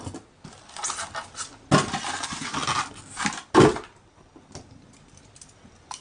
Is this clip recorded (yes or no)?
yes